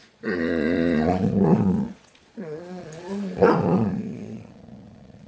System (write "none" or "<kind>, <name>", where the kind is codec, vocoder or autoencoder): vocoder, Vocos